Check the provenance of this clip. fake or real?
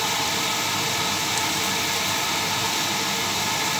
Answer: real